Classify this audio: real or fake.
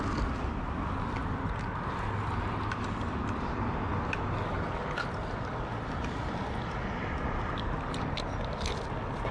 real